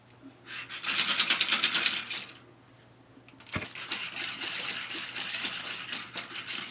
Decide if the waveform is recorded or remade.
recorded